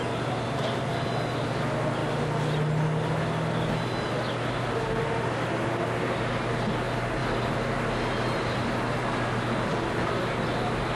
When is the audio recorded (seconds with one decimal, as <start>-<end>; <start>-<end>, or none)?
0.0-10.9